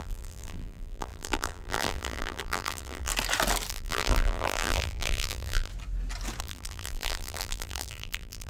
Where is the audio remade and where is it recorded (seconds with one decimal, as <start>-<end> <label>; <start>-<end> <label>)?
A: 0.0-3.1 remade; 3.1-3.7 recorded; 3.7-5.7 remade; 5.7-6.4 recorded; 6.4-8.5 remade